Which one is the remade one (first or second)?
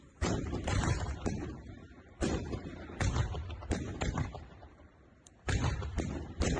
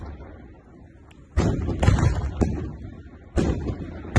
first